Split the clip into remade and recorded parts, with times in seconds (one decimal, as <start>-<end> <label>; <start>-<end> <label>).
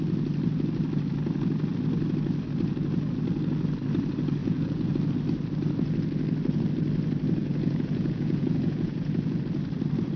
0.0-4.4 recorded; 4.4-4.9 remade; 4.9-7.4 recorded; 7.4-9.4 remade; 9.4-10.2 recorded